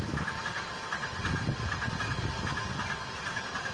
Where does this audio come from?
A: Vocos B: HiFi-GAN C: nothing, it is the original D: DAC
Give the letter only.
C